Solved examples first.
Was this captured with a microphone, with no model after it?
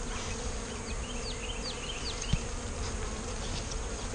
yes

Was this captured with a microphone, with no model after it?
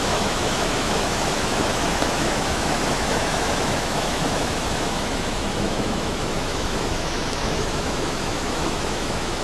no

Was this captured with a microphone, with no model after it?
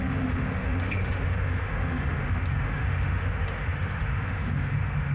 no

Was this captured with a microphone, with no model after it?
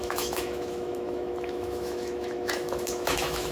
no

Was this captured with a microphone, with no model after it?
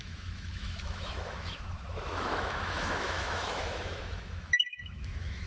no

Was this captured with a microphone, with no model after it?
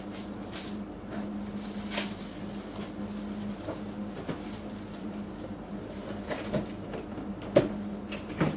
yes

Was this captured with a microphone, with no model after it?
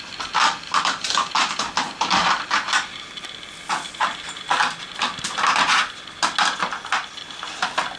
yes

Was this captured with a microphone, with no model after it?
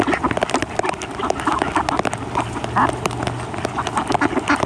yes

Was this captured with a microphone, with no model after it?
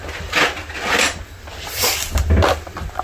yes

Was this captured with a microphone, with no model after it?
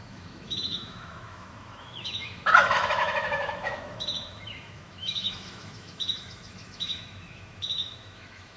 no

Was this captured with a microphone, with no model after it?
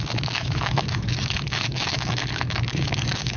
no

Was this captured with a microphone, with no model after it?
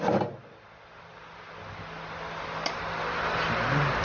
yes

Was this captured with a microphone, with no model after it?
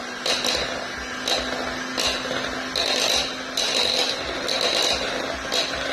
yes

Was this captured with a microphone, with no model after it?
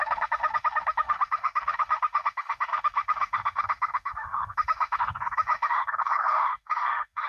no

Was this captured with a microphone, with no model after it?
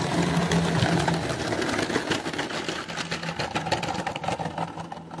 yes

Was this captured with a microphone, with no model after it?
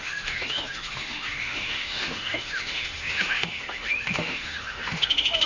no